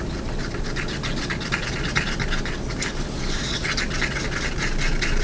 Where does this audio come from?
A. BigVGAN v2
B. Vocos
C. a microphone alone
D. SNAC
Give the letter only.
C